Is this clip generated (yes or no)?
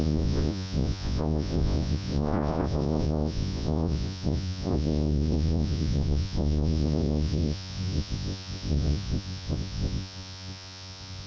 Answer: yes